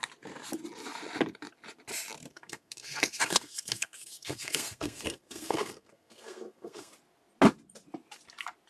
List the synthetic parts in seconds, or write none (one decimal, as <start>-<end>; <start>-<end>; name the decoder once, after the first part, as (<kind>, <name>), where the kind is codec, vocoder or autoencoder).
2.3-6.9 (codec, SNAC)

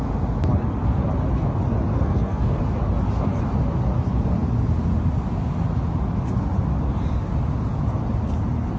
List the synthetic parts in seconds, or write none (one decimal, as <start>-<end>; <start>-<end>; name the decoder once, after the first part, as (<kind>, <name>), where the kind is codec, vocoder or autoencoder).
1.9-2.6 (codec, SNAC)